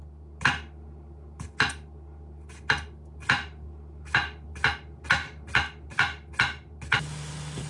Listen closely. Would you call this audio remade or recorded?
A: recorded